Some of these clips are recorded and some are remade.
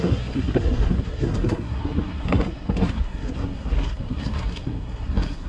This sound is remade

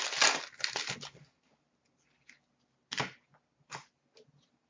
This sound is recorded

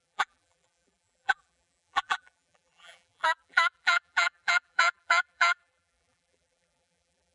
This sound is remade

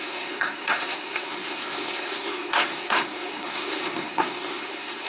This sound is remade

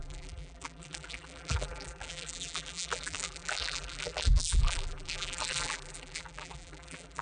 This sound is remade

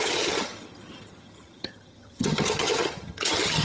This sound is remade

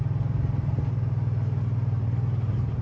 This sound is recorded